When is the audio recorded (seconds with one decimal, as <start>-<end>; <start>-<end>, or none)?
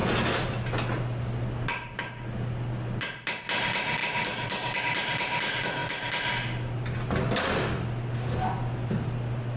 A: 0.0-9.6